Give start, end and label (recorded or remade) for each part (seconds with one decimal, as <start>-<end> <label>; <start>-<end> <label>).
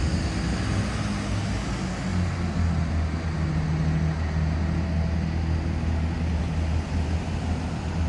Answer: 0.0-8.1 recorded